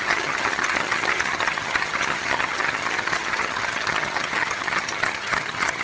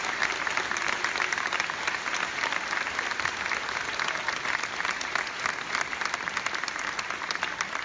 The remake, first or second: first